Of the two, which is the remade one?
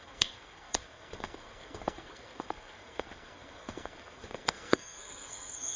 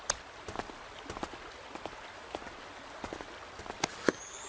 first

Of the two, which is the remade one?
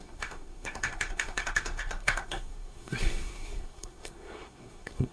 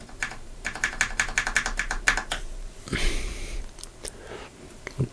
first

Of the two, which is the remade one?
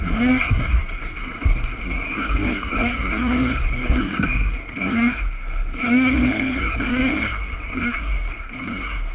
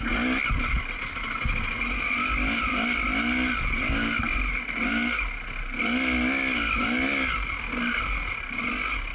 first